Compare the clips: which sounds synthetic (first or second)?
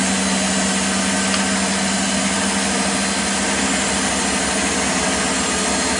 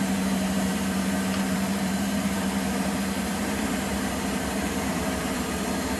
second